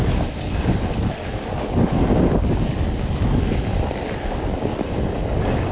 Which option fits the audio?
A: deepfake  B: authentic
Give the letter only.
B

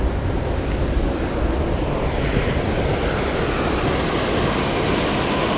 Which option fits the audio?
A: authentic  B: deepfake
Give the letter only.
A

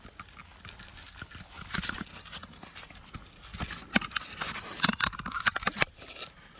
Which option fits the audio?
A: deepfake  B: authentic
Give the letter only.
B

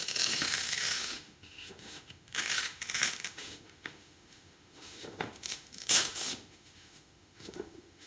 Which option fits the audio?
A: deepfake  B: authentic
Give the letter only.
A